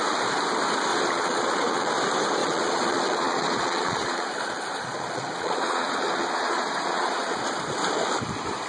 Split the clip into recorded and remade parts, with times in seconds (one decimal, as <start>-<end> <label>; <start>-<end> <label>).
0.0-0.9 recorded; 0.9-1.9 remade; 1.9-2.4 recorded; 2.4-7.6 remade; 7.6-8.7 recorded